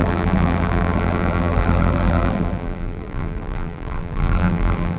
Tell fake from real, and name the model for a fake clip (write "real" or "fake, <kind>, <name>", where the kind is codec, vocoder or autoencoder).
fake, vocoder, BigVGAN v2